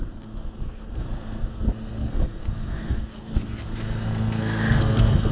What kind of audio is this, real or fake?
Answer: fake